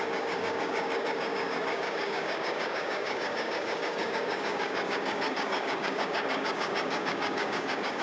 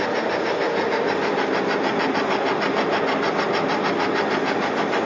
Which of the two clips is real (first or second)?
second